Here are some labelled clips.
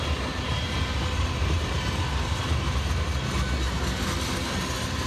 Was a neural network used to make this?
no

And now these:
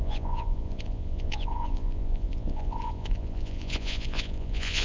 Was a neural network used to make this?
yes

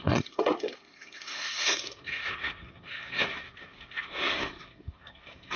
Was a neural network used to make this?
yes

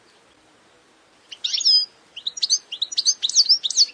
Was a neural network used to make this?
no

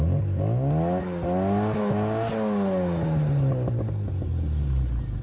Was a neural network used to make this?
no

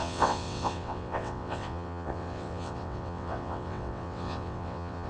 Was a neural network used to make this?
yes